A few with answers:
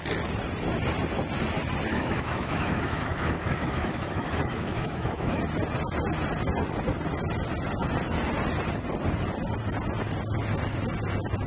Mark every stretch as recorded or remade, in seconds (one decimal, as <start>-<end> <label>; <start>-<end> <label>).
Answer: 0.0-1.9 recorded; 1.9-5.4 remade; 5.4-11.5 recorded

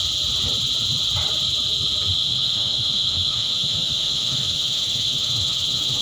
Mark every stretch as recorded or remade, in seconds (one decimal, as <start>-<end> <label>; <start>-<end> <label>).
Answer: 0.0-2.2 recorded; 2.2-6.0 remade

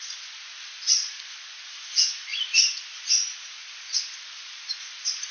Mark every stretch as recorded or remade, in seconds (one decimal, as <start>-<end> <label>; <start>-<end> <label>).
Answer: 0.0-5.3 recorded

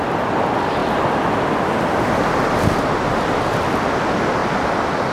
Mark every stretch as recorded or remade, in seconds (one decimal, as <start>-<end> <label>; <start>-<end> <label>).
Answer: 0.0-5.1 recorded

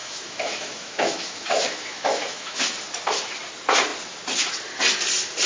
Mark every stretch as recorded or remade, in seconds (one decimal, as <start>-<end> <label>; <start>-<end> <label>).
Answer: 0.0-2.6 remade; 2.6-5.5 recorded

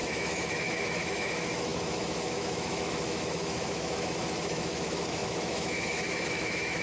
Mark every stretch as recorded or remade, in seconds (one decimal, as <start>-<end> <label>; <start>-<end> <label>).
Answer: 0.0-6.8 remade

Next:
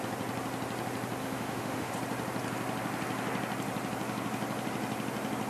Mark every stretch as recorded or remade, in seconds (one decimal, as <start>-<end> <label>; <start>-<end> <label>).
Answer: 0.0-1.2 recorded; 1.2-1.9 remade; 1.9-5.5 recorded